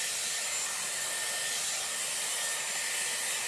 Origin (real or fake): real